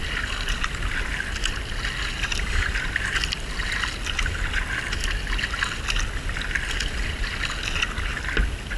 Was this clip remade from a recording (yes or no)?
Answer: no